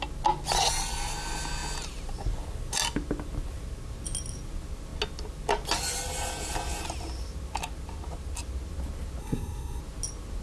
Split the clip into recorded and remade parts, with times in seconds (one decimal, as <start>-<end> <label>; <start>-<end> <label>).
0.0-9.2 recorded; 9.2-9.8 remade; 9.8-10.4 recorded